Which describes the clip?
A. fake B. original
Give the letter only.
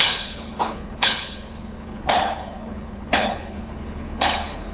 A